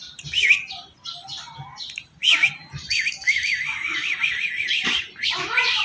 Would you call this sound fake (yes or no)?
no